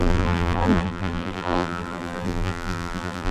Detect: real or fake fake